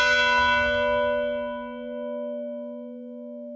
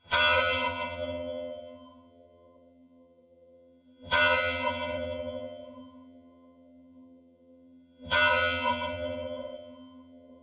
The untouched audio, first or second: first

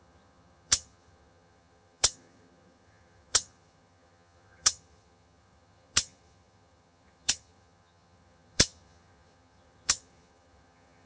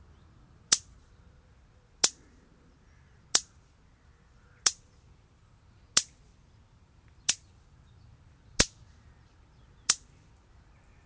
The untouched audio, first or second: second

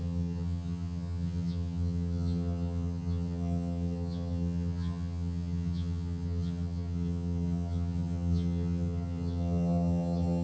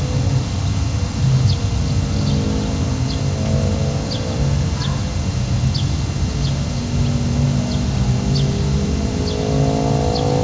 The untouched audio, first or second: second